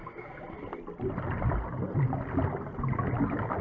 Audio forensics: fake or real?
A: real